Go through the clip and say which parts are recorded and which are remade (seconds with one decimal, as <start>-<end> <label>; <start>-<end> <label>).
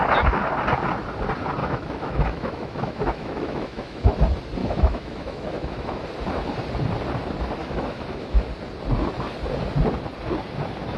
0.0-1.6 recorded; 1.6-4.1 remade; 4.1-4.6 recorded; 4.6-6.0 remade; 6.0-7.6 recorded; 7.6-8.5 remade; 8.5-11.0 recorded